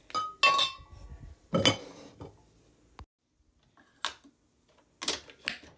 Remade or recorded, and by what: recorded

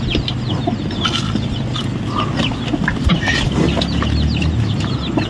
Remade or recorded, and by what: recorded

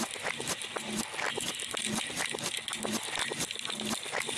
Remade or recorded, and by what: recorded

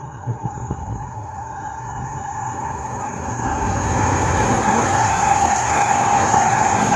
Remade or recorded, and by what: remade, codec, SNAC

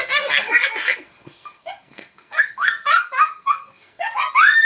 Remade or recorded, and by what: remade, codec, SNAC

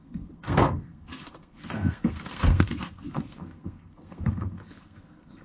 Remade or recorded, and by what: remade, codec, SNAC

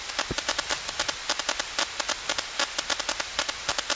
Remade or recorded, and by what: recorded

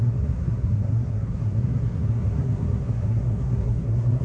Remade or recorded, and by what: remade, codec, SNAC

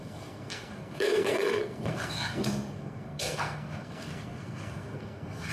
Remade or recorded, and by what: remade, codec, SNAC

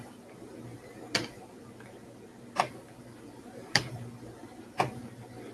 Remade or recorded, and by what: recorded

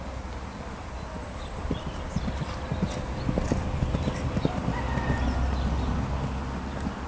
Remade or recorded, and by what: recorded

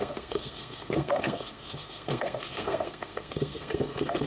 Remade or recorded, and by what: remade, codec, SNAC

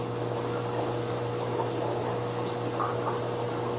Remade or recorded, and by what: recorded